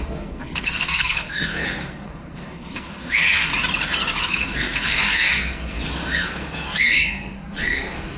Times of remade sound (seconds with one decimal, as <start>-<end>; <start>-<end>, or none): 0.0-3.5; 4.2-8.2